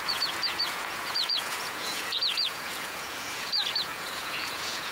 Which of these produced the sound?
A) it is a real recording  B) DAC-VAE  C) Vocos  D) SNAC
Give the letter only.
C